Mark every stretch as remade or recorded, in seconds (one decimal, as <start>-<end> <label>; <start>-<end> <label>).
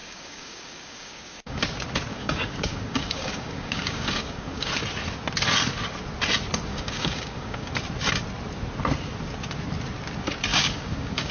0.0-1.6 remade; 1.6-2.1 recorded; 2.1-4.7 remade; 4.7-6.7 recorded; 6.7-7.7 remade; 7.7-10.5 recorded; 10.5-11.3 remade